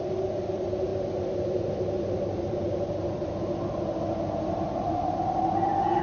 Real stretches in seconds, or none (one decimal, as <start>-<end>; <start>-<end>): 0.0-6.0